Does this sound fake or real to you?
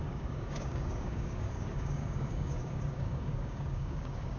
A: fake